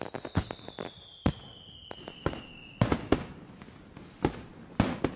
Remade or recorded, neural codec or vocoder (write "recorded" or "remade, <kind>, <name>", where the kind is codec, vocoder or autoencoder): recorded